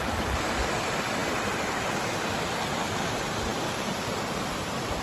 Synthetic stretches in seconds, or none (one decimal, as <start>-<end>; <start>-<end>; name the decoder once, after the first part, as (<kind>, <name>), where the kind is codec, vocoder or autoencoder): none